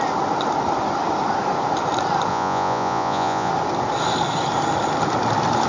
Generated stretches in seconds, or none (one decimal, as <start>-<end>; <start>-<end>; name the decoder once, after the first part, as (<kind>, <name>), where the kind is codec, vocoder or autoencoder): 2.3-3.5 (vocoder, Vocos)